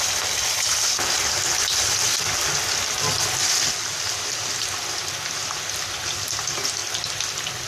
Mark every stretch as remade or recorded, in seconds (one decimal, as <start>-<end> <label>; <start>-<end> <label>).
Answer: 0.0-3.4 recorded; 3.4-4.5 remade; 4.5-7.7 recorded